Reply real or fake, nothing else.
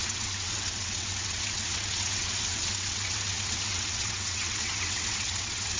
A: fake